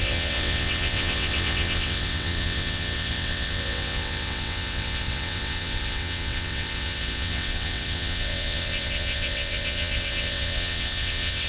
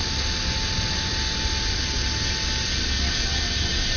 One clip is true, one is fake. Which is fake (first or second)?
first